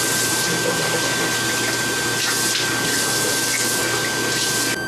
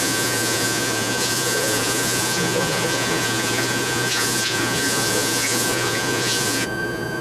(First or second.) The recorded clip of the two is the first